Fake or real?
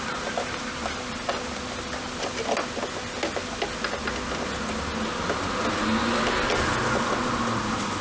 real